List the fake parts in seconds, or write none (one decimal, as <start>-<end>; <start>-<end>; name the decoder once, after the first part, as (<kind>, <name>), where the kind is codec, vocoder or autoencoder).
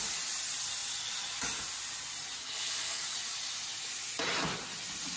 2.4-3.0 (codec, HILCodec)